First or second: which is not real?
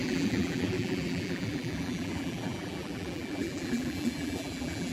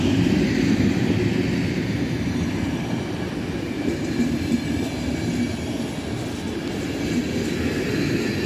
first